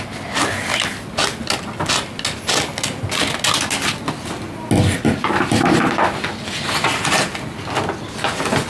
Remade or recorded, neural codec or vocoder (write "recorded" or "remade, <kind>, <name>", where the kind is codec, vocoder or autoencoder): recorded